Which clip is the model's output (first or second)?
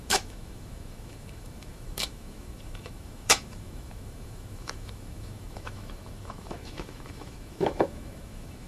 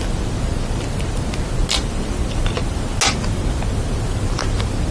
first